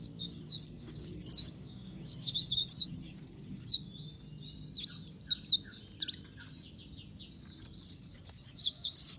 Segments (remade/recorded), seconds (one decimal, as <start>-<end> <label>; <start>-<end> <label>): 0.0-3.8 remade; 3.8-7.9 recorded; 7.9-9.2 remade